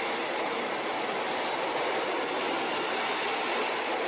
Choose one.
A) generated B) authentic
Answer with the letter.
B